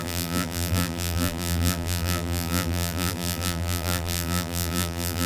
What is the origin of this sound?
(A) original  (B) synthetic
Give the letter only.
B